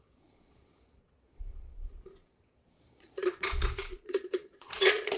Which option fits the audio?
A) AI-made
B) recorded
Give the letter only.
A